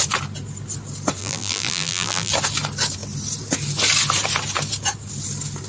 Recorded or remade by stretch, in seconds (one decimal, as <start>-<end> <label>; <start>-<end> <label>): 0.0-1.2 recorded; 1.2-2.3 remade; 2.3-5.7 recorded